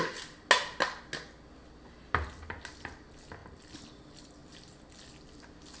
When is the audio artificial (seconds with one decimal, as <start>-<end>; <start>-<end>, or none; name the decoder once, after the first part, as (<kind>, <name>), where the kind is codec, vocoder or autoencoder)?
none